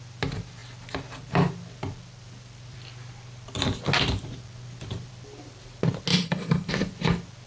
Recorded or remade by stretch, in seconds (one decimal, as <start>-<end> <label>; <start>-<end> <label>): 0.0-6.1 recorded; 6.1-6.7 remade; 6.7-7.5 recorded